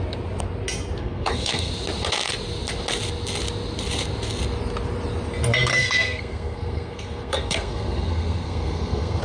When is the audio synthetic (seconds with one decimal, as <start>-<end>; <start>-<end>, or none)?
1.0-1.7; 5.7-9.2